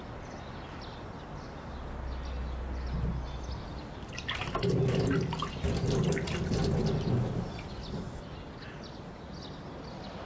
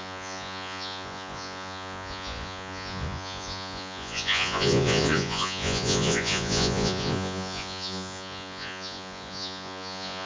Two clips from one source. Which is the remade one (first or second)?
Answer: second